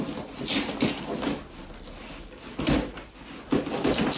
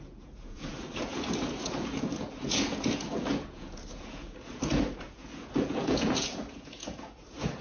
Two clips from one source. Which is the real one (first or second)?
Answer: first